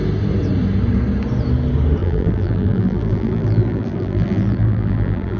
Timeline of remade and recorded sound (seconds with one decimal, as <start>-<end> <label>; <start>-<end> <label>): 0.0-2.0 recorded; 2.0-5.4 remade